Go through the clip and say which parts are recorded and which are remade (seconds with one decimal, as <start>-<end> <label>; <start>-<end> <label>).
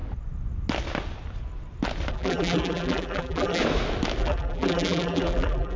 0.0-2.1 recorded; 2.1-3.6 remade; 3.6-4.2 recorded; 4.2-5.8 remade